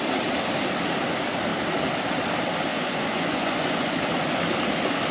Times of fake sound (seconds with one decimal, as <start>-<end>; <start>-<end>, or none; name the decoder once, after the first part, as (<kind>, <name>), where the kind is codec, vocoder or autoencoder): 2.7-3.9 (vocoder, Vocos)